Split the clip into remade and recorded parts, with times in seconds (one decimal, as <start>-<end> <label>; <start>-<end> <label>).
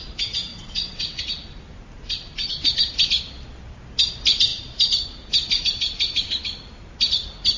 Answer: 0.0-0.5 recorded; 0.5-1.2 remade; 1.2-7.6 recorded